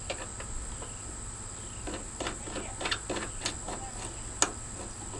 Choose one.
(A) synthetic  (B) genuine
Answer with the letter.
B